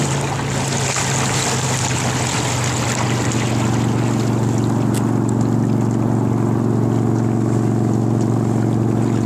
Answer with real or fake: real